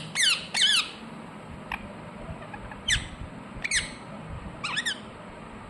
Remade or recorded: recorded